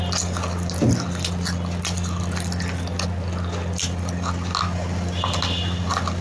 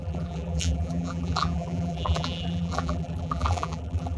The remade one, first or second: second